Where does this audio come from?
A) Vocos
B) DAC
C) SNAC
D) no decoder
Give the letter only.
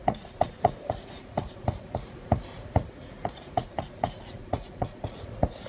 A